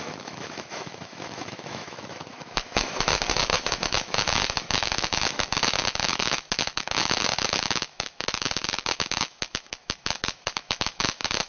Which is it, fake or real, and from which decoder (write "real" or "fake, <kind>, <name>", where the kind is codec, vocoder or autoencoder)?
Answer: fake, autoencoder, DAC-VAE